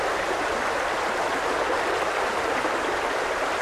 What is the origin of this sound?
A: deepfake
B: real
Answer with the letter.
B